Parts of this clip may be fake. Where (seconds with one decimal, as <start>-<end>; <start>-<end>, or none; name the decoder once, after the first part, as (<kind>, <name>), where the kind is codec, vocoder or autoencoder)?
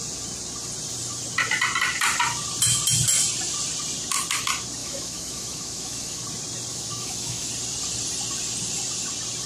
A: 4.8-6.2 (autoencoder, DAC-VAE); 6.7-7.5